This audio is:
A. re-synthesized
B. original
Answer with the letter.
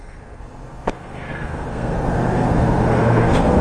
A